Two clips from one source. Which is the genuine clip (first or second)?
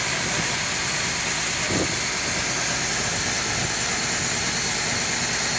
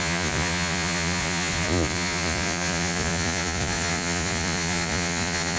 first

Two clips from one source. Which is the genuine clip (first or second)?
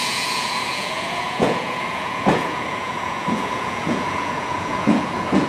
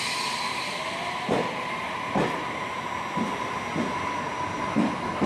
second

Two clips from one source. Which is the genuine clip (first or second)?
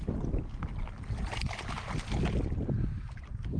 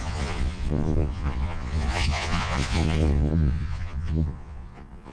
first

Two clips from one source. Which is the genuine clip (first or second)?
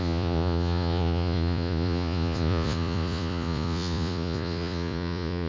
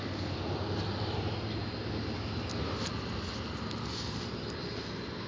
second